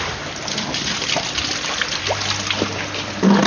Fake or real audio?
real